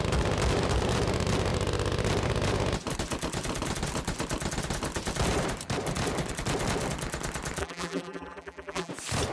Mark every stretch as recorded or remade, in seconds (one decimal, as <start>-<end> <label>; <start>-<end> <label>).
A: 0.0-7.6 recorded; 7.6-8.9 remade; 8.9-9.3 recorded